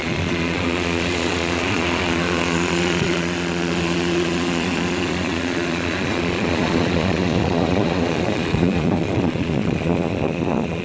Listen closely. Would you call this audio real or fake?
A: fake